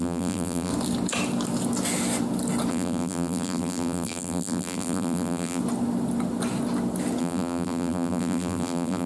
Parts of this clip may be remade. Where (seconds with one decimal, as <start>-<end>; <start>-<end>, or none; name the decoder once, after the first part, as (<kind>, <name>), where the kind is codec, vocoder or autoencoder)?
0.0-0.7 (vocoder, BigVGAN v2); 2.7-5.6; 7.2-9.1